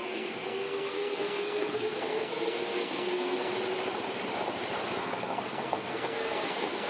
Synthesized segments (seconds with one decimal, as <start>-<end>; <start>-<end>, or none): 0.0-3.5; 5.0-6.9